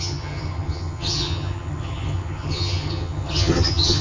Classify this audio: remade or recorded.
remade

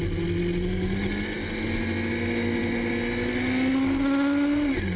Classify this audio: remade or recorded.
recorded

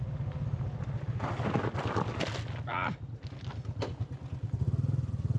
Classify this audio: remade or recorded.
recorded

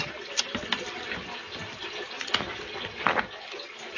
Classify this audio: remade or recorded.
recorded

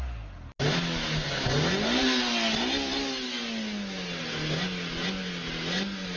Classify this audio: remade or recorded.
recorded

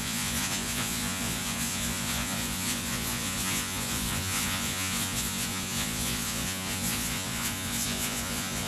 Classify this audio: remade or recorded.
remade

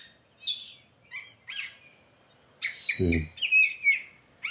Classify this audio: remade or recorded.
recorded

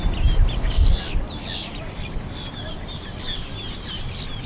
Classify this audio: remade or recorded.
recorded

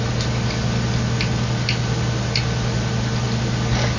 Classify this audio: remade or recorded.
recorded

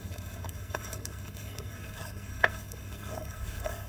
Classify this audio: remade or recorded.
remade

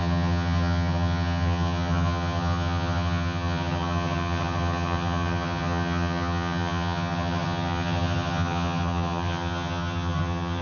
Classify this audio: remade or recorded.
remade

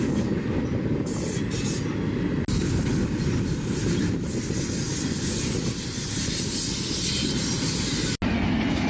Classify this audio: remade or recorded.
recorded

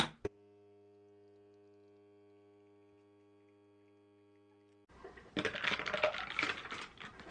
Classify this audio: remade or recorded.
recorded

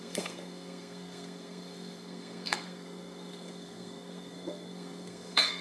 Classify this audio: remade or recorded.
remade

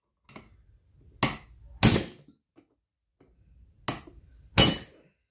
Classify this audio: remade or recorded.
recorded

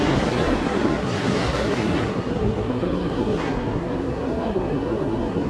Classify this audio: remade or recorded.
remade